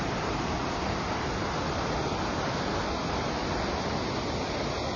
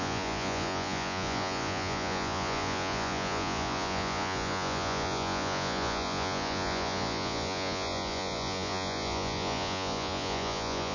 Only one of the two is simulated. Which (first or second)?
second